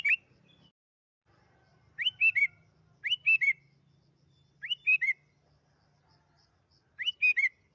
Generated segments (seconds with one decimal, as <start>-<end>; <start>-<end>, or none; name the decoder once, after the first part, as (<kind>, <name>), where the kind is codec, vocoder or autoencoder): none